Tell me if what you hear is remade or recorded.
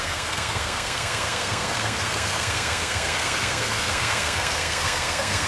remade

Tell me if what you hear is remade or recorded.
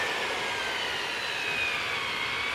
recorded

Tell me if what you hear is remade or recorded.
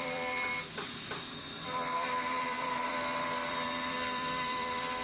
remade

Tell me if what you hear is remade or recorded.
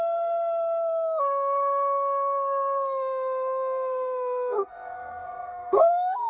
remade